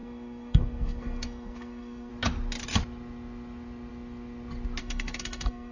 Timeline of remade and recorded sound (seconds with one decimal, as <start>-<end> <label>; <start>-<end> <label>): 0.0-2.1 remade; 2.1-4.8 recorded; 4.8-5.7 remade